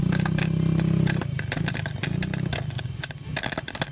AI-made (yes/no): no